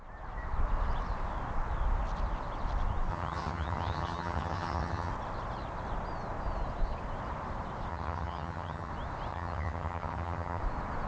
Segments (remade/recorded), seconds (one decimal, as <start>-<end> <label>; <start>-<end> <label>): 0.0-3.1 recorded; 3.1-5.1 remade; 5.1-7.9 recorded; 7.9-8.9 remade; 8.9-9.3 recorded; 9.3-10.6 remade; 10.6-11.1 recorded